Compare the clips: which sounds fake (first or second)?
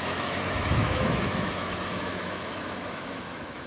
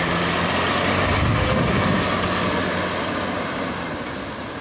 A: first